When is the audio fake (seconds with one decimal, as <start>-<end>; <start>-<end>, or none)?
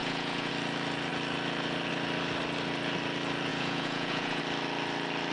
0.0-0.5; 3.5-4.4